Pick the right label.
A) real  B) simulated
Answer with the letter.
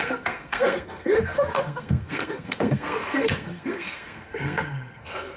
B